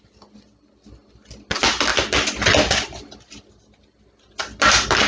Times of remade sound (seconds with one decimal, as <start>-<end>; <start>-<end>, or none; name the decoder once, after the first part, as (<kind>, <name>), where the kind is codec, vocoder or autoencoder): none